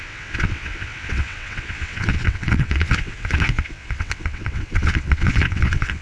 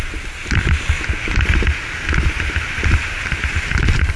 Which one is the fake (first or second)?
first